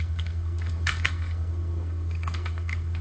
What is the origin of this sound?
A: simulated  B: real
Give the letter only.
A